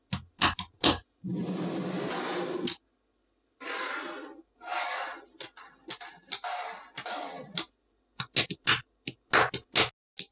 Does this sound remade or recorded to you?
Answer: recorded